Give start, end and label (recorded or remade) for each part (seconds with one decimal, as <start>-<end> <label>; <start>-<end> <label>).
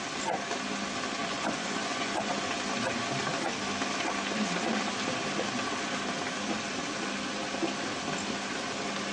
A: 0.0-1.2 recorded; 1.2-2.3 remade; 2.3-9.1 recorded